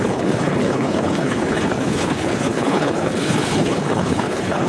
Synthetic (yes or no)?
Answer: yes